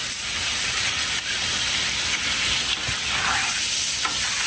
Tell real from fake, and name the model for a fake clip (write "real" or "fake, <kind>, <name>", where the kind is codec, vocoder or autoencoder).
real